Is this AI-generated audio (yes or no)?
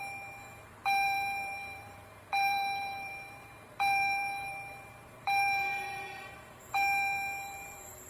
yes